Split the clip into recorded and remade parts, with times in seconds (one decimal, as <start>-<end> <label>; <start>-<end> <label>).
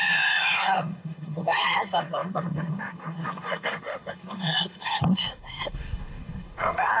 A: 0.0-7.0 remade